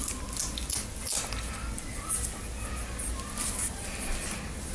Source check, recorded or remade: recorded